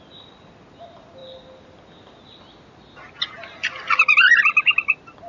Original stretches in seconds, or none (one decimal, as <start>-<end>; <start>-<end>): 0.0-5.3